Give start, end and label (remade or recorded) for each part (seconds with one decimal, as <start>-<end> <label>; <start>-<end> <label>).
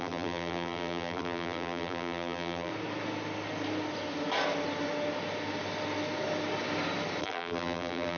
0.0-2.7 remade; 2.7-7.2 recorded; 7.2-8.2 remade